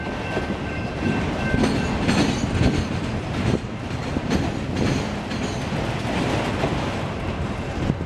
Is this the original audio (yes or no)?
yes